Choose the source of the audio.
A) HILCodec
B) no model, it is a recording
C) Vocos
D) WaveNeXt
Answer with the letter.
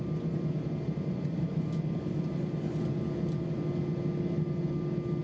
B